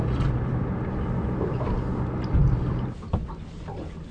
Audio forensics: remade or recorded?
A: recorded